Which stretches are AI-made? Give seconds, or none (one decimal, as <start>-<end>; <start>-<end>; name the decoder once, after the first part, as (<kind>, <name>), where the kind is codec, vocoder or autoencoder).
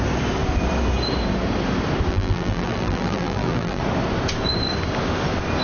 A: 2.1-3.8 (vocoder, BigVGAN v2)